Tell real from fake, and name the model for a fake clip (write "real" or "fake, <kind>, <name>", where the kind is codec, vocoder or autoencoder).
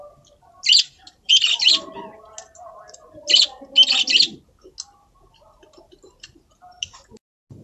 real